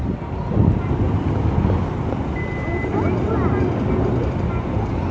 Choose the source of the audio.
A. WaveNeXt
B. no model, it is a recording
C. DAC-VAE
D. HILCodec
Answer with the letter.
B